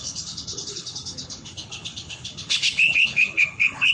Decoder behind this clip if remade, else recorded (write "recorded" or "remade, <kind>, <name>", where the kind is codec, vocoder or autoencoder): remade, codec, HILCodec